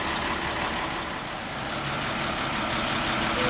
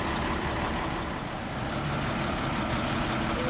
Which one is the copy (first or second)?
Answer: second